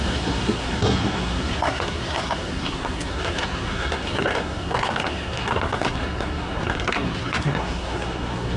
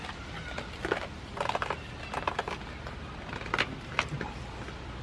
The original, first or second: second